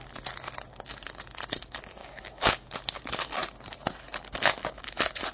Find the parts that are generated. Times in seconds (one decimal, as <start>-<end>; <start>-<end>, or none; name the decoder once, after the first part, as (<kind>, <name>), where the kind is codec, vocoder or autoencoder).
2.0-2.7 (codec, DAC)

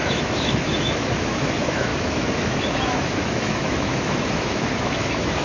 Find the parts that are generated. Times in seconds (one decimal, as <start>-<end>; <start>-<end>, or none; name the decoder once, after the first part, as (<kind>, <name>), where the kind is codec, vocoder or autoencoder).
0.0-5.4 (autoencoder, DAC-VAE)

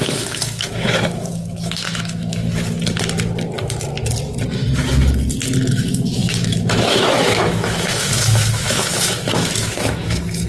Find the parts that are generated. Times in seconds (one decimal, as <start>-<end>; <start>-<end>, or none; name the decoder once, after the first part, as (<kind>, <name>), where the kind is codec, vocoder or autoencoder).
0.0-2.4 (autoencoder, DAC-VAE); 5.7-10.5

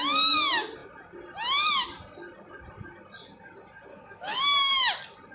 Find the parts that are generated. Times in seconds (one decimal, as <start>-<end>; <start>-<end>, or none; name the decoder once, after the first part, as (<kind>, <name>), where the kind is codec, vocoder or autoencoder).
3.9-4.7 (codec, DAC)

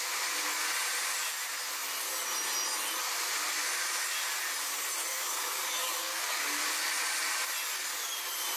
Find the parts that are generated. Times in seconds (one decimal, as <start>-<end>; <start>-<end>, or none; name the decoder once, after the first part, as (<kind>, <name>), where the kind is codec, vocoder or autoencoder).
5.1-6.6 (codec, DAC)

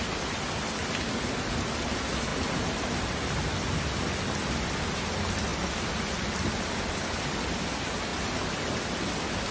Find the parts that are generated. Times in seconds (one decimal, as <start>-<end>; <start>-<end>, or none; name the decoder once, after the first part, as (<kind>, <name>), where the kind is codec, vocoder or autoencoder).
none

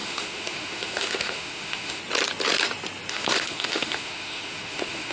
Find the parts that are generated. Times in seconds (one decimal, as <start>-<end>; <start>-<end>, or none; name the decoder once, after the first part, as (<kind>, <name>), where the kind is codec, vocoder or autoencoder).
0.0-2.0 (autoencoder, DAC-VAE); 3.1-5.1